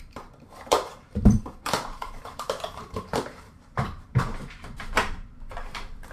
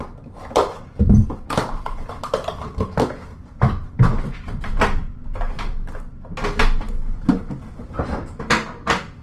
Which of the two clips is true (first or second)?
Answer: second